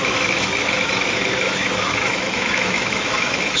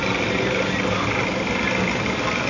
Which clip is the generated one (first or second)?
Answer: first